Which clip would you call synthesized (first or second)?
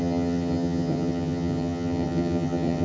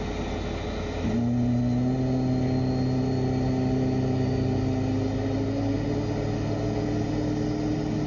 first